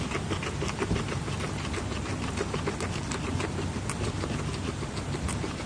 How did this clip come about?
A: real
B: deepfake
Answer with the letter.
A